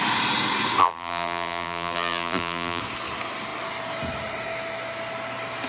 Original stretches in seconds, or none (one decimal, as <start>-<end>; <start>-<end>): 0.0-0.8; 2.8-5.7